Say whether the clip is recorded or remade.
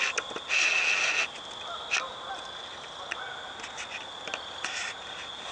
recorded